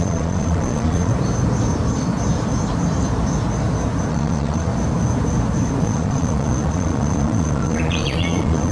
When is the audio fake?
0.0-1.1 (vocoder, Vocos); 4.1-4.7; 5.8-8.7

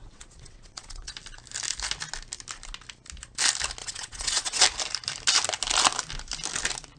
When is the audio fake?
0.0-1.1 (vocoder, WaveNeXt); 3.8-4.6

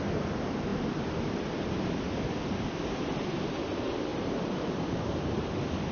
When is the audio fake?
0.7-1.7 (vocoder, BigVGAN v2); 4.1-5.0

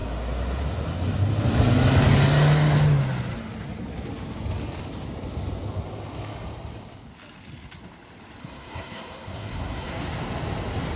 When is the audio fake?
8.4-10.0 (codec, SNAC)

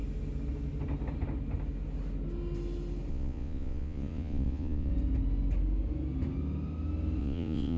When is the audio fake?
3.1-4.9 (vocoder, Vocos); 7.2-7.8